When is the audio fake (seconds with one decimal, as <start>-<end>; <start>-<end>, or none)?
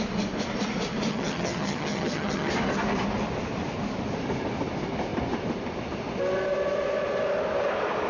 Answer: 1.1-2.5